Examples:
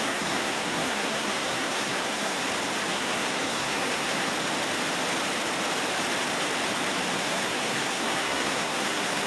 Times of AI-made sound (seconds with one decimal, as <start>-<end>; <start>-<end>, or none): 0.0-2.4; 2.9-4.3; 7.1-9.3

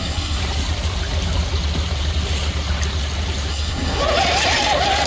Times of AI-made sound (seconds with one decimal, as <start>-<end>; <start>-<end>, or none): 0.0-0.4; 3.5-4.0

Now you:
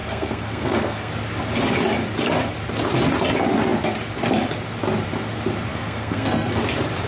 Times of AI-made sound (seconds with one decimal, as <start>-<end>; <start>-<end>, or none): 0.0-1.1; 5.7-6.6

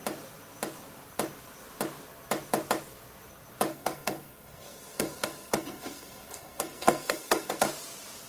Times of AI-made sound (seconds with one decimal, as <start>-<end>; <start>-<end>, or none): 3.7-7.6

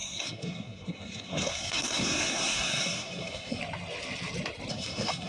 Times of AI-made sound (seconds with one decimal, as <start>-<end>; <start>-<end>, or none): 0.0-3.6; 4.7-5.3

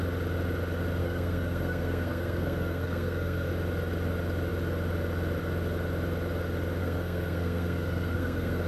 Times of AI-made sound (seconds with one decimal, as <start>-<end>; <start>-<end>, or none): 1.0-3.5; 6.8-8.7

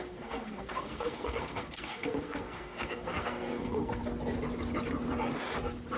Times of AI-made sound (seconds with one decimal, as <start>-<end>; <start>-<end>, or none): 0.0-4.0

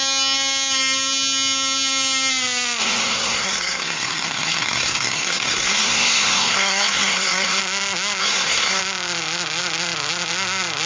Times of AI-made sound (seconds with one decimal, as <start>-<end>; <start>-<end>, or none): 2.8-7.6; 8.2-8.8